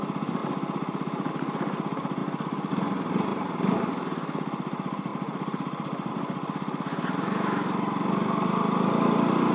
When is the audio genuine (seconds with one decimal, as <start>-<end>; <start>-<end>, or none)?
0.0-3.3; 3.9-5.1; 6.1-9.5